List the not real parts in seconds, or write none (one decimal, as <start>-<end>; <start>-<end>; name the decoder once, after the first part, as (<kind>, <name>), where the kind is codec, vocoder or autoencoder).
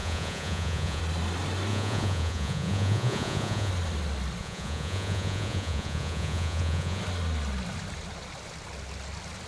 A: 0.0-1.0 (vocoder, Vocos); 1.7-3.7; 4.4-7.0